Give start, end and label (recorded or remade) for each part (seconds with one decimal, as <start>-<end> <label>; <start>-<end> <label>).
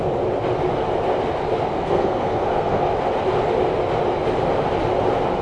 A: 0.0-1.7 recorded; 1.7-2.9 remade; 2.9-5.4 recorded